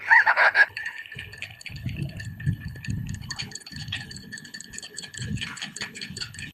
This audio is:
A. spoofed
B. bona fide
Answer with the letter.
A